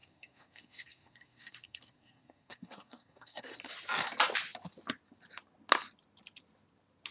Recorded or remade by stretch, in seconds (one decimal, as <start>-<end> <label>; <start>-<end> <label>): 0.0-3.6 remade; 3.6-7.1 recorded